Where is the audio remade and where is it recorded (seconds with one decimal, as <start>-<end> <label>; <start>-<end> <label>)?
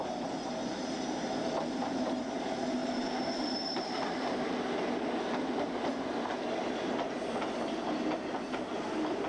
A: 0.0-2.8 recorded; 2.8-4.7 remade; 4.7-9.3 recorded